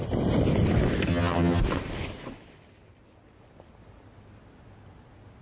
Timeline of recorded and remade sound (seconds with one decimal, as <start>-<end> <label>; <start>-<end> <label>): 0.0-1.1 recorded; 1.1-1.6 remade; 1.6-5.4 recorded

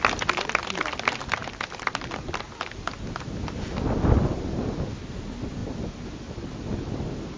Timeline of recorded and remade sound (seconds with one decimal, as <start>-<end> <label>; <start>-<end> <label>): 0.0-7.4 recorded

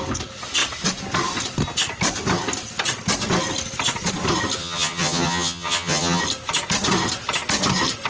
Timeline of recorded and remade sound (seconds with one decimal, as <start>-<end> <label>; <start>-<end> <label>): 0.0-4.6 recorded; 4.6-6.2 remade; 6.2-8.1 recorded

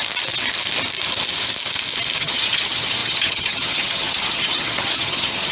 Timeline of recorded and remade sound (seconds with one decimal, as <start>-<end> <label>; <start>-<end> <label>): 0.0-2.2 recorded; 2.2-5.5 remade

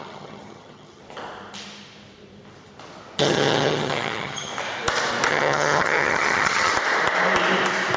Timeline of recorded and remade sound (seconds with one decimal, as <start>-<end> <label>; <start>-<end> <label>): 0.0-1.0 remade; 1.0-3.2 recorded; 3.2-4.5 remade; 4.5-5.3 recorded; 5.3-6.7 remade; 6.7-8.0 recorded